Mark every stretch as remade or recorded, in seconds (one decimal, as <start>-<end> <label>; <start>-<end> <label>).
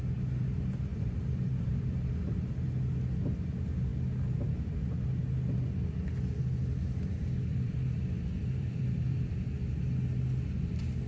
0.0-0.9 recorded; 0.9-2.1 remade; 2.1-7.5 recorded; 7.5-9.4 remade; 9.4-11.1 recorded